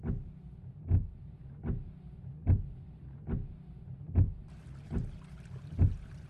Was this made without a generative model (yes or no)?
yes